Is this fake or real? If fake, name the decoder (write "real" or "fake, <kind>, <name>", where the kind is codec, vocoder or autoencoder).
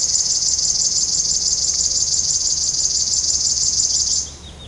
real